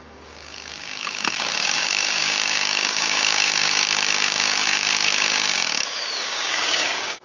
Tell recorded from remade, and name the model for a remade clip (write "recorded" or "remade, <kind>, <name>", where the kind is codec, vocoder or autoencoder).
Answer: remade, codec, DAC